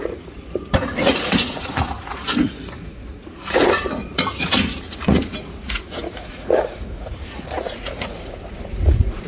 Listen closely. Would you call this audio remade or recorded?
remade